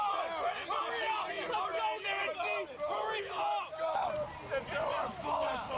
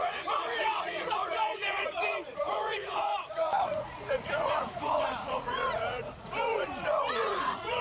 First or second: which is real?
first